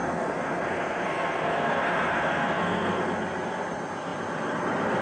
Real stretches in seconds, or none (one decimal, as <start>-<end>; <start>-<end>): 3.0-5.0